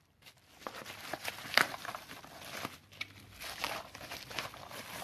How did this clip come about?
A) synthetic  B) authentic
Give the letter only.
A